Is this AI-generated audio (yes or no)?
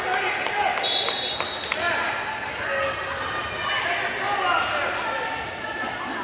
no